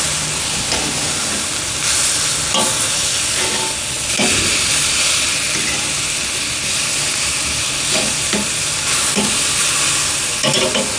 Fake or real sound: real